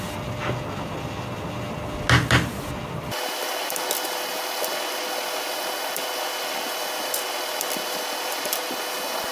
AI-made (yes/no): no